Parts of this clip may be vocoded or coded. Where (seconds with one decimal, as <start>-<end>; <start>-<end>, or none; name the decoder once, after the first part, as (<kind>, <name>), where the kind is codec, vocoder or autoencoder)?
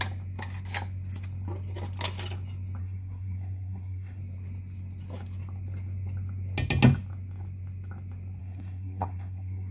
2.8-4.2 (codec, SNAC); 8.4-9.7